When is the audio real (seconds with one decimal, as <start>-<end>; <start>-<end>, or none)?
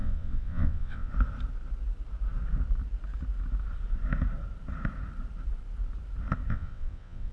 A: 1.1-6.5